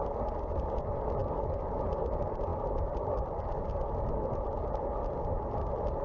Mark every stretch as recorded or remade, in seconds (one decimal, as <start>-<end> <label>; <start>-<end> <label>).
0.0-6.0 recorded